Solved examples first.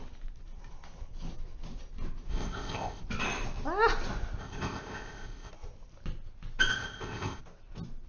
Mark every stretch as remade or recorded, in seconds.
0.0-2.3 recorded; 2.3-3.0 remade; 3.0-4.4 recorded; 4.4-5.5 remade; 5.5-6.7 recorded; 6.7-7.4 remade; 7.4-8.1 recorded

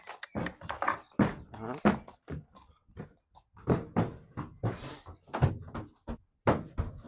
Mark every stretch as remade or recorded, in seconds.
0.0-7.1 recorded

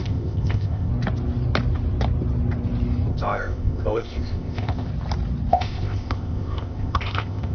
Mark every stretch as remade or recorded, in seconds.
0.0-0.9 remade; 0.9-3.1 recorded; 3.1-4.9 remade; 4.9-5.5 recorded; 5.5-7.5 remade

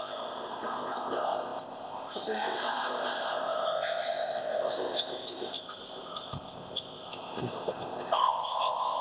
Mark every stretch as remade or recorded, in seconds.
0.0-9.0 remade

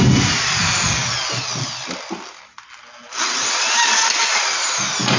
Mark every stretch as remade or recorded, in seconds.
0.0-5.2 recorded

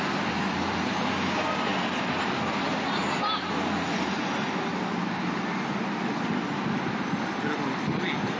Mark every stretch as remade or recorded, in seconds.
0.0-8.4 recorded